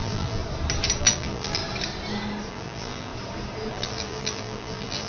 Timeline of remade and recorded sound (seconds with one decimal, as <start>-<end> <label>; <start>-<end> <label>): 0.0-0.4 remade; 0.4-1.0 recorded; 1.0-1.6 remade; 1.6-2.5 recorded; 2.5-3.1 remade; 3.1-3.7 recorded; 3.7-5.1 remade